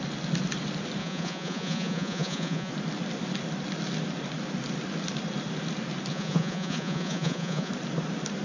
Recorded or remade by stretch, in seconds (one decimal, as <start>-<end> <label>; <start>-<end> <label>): 0.0-1.0 recorded; 1.0-2.7 remade; 2.7-6.1 recorded; 6.1-7.7 remade; 7.7-8.4 recorded